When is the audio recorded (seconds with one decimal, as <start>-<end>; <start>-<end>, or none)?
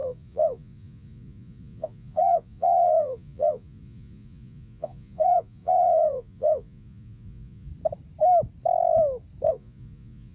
7.7-9.5